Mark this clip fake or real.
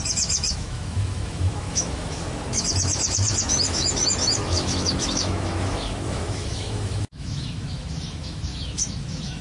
fake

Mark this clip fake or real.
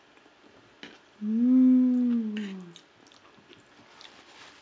real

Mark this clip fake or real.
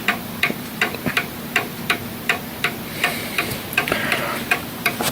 fake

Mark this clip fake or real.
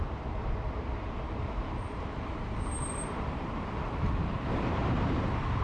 fake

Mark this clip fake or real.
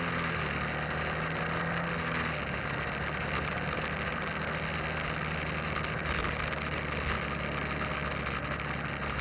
real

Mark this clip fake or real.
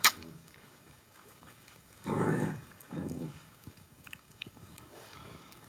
fake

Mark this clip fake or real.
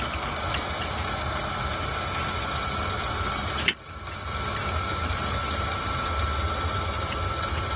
real